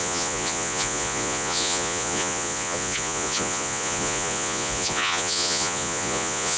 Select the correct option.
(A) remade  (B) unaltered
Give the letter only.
A